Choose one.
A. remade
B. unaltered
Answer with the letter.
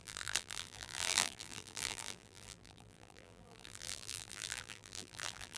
A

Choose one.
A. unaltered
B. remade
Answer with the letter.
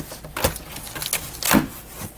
A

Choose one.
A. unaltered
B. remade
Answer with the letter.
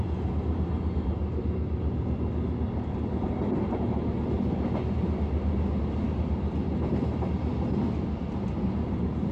A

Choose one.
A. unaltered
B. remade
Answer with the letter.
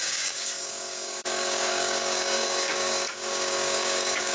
B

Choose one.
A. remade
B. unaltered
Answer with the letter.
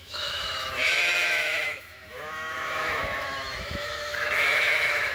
A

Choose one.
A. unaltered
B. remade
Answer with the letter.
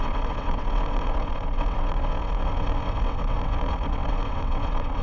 B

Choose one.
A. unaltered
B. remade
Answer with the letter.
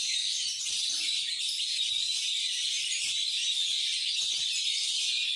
B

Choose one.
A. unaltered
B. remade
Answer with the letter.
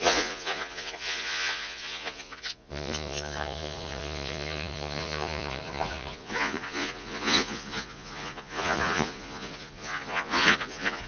B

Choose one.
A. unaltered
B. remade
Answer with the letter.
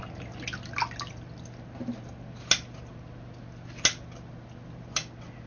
A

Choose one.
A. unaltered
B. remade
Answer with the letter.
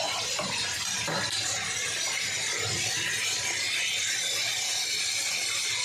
A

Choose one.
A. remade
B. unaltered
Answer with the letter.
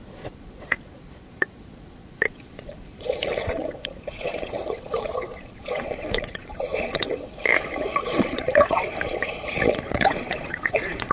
A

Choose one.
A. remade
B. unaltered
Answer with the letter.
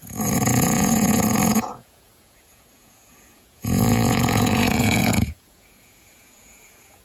A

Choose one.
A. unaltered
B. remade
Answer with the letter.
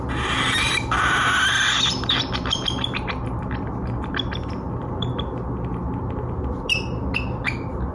A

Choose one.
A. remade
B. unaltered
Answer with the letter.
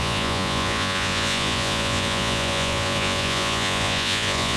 A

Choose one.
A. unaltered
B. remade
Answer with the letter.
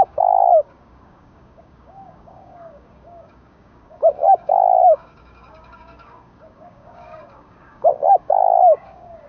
B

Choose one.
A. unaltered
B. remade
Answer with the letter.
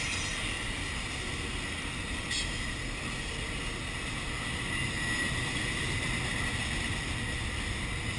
A